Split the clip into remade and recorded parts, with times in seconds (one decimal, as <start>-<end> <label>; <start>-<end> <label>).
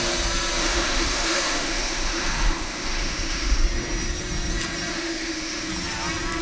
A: 0.0-0.6 recorded; 0.6-3.6 remade; 3.6-4.9 recorded; 4.9-5.7 remade; 5.7-6.4 recorded